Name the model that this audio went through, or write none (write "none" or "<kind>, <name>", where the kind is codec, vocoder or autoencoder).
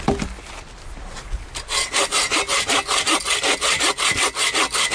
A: none